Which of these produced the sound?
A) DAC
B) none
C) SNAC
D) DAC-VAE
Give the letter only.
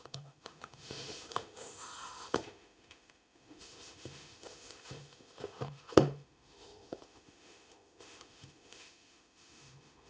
D